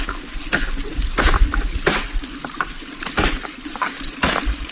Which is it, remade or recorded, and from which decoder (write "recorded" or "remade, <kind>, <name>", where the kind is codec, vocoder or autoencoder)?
recorded